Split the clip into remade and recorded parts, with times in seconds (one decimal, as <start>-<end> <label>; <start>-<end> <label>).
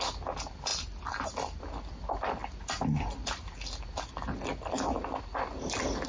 0.0-0.7 recorded; 0.7-1.6 remade; 1.6-2.4 recorded; 2.4-4.5 remade; 4.5-6.1 recorded